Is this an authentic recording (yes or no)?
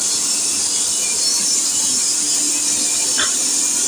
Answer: yes